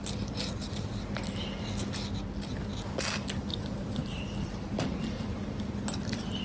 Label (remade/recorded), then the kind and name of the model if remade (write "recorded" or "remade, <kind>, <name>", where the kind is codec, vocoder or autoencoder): recorded